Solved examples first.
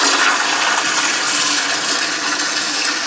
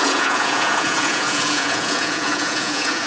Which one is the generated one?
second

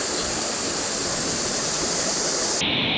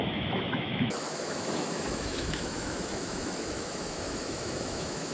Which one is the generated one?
second